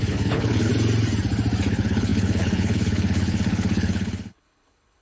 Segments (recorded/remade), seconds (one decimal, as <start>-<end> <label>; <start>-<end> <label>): 0.0-0.7 remade; 0.7-1.7 recorded; 1.7-5.0 remade